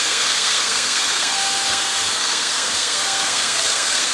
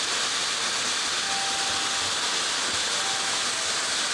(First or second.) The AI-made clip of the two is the first